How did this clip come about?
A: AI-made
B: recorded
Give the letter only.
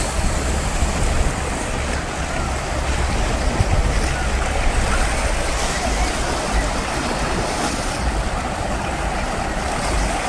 B